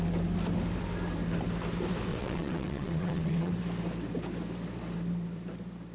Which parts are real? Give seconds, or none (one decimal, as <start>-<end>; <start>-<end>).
0.0-2.1; 3.5-5.9